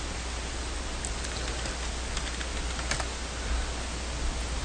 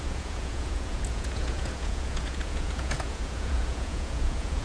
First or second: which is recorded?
first